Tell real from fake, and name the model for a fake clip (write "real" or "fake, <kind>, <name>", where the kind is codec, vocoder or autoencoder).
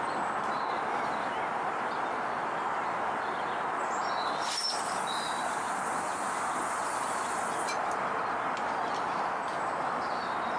real